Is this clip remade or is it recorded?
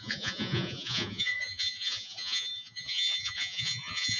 remade